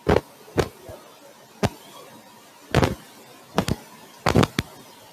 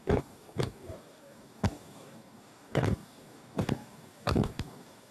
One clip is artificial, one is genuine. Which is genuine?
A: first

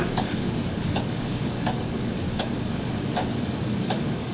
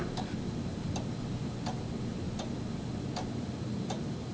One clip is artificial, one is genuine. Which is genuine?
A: second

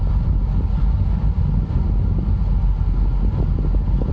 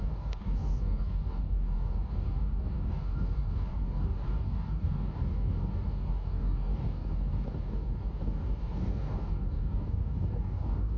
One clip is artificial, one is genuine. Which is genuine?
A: first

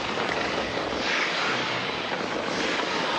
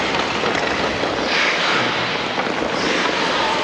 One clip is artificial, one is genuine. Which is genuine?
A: second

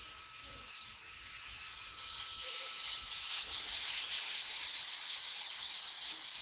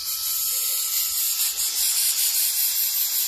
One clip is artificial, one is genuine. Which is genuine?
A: second